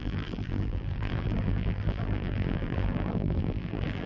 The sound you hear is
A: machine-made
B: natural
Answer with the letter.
A